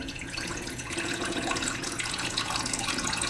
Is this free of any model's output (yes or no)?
no